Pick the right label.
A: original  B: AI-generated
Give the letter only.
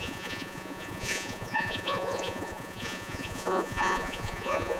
B